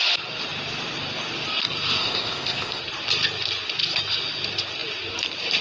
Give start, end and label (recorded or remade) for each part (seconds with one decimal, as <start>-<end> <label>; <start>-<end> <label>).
0.0-2.0 recorded; 2.0-2.8 remade; 2.8-5.6 recorded